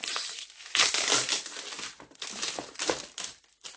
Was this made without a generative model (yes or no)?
yes